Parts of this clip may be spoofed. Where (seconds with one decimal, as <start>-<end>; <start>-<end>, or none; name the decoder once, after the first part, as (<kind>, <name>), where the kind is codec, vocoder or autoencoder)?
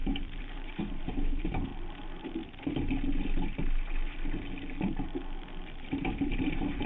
0.0-1.7 (vocoder, BigVGAN v2); 5.6-6.9